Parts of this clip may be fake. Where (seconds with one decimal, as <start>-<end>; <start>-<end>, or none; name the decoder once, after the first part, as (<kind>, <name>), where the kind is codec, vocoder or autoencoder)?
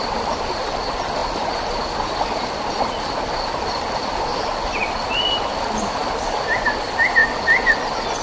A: none